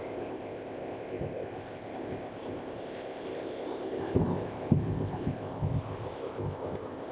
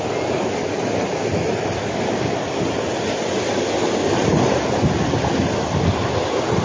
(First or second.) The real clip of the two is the second